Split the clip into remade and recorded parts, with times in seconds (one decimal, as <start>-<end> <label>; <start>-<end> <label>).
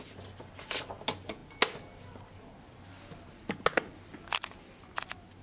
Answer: 0.0-5.4 recorded